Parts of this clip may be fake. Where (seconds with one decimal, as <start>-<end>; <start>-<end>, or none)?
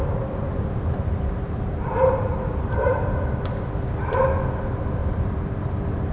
0.0-3.7; 5.0-6.1